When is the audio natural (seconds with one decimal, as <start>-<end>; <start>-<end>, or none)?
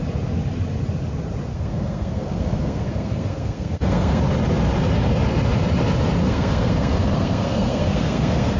0.0-1.5; 4.2-6.2